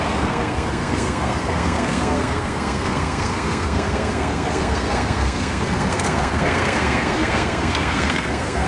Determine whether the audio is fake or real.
fake